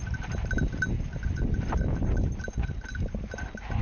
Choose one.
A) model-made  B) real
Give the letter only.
B